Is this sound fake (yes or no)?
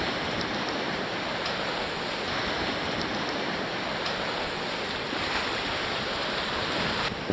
yes